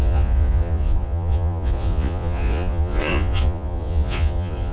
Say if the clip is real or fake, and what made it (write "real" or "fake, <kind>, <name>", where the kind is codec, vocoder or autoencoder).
fake, vocoder, Vocos